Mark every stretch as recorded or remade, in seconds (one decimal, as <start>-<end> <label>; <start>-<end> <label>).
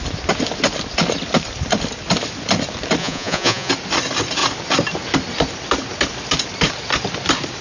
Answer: 0.0-3.0 recorded; 3.0-3.7 remade; 3.7-7.6 recorded